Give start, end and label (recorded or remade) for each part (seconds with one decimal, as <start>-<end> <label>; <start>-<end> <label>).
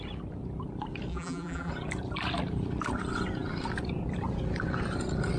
0.0-1.1 recorded; 1.1-1.7 remade; 1.7-5.4 recorded